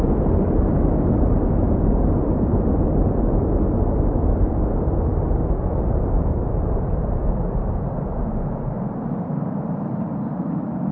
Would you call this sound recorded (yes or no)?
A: yes